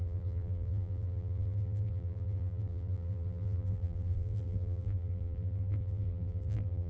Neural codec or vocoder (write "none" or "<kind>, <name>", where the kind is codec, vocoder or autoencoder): vocoder, BigVGAN v2